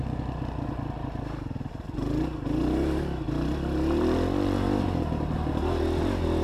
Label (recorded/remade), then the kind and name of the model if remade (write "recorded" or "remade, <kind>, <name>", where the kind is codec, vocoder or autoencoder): recorded